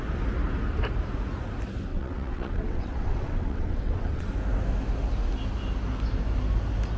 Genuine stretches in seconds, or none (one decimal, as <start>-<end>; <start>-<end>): 0.0-1.9; 4.3-7.0